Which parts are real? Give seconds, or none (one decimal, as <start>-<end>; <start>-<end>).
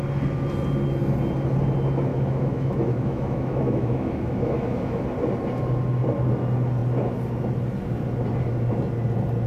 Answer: 0.0-2.1; 5.0-9.5